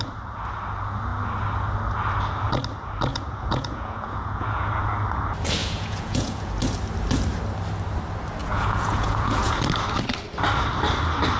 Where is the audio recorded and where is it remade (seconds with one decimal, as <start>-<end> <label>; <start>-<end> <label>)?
0.0-3.1 recorded; 3.1-4.7 remade; 4.7-5.6 recorded; 5.6-6.5 remade; 6.5-8.4 recorded; 8.4-9.6 remade; 9.6-11.4 recorded